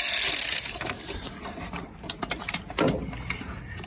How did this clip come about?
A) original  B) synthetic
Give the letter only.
A